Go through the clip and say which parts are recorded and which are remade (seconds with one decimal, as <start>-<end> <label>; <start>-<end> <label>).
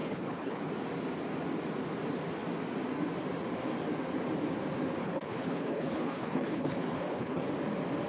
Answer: 0.0-0.7 remade; 0.7-5.0 recorded; 5.0-7.4 remade; 7.4-8.1 recorded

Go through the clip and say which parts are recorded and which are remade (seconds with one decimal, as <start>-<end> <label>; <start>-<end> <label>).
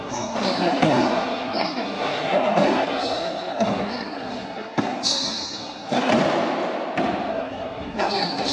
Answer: 0.0-6.1 remade; 6.1-7.3 recorded; 7.3-8.5 remade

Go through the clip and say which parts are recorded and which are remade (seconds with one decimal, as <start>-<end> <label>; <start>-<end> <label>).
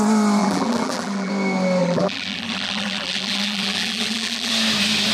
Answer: 0.0-0.4 recorded; 0.4-1.3 remade; 1.3-1.8 recorded; 1.8-4.5 remade; 4.5-5.1 recorded